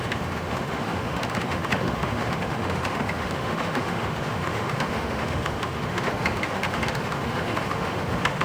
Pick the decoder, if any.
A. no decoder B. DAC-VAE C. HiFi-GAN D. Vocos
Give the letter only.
B